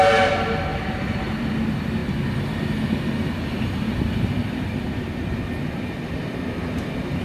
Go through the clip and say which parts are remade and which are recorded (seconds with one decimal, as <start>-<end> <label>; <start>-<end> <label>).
0.0-0.7 recorded; 0.7-1.5 remade; 1.5-7.2 recorded

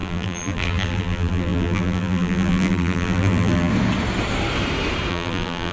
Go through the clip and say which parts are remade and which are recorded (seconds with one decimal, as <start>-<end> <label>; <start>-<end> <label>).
0.0-3.7 remade; 3.7-5.1 recorded; 5.1-5.7 remade

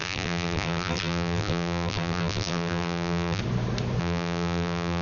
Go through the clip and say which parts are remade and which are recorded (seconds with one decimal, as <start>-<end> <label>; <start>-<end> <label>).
0.0-3.4 remade; 3.4-4.0 recorded; 4.0-5.0 remade